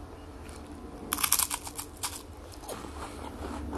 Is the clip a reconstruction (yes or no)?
no